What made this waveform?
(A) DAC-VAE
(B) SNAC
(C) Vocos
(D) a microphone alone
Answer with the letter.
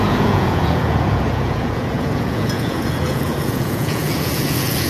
C